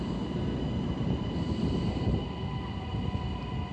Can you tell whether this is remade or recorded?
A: recorded